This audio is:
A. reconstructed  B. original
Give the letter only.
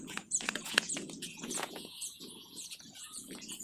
A